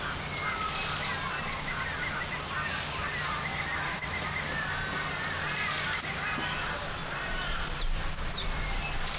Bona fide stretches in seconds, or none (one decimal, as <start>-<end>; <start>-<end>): 0.0-7.0; 7.9-9.2